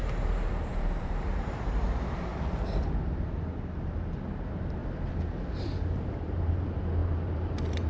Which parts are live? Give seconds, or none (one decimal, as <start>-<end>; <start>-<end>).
2.3-4.3; 4.8-5.6